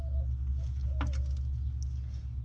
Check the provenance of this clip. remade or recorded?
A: recorded